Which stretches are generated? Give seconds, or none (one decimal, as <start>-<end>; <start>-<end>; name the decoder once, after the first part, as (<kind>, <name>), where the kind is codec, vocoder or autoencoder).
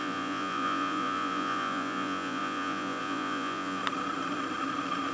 0.0-3.8 (vocoder, Vocos)